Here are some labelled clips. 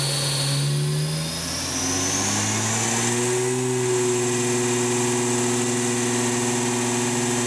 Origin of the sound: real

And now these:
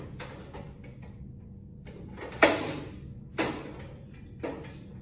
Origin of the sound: real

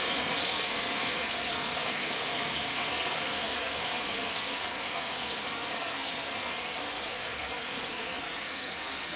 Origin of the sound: fake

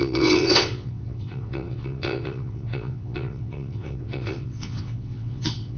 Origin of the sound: fake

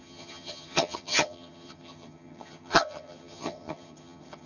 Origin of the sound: fake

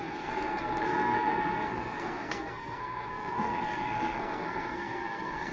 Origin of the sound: fake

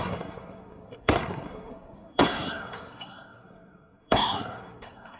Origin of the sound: fake